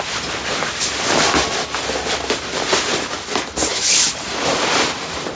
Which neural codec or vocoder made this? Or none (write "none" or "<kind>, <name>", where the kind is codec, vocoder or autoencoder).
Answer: none